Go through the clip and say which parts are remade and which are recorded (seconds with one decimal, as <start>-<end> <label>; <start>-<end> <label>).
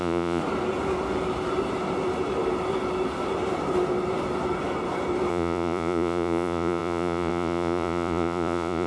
0.0-0.4 remade; 0.4-5.3 recorded; 5.3-8.9 remade